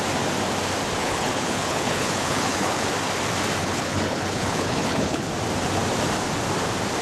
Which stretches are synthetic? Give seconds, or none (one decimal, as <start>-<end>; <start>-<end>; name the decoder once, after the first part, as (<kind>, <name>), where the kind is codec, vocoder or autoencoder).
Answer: 1.0-2.9 (codec, HILCodec); 3.6-5.3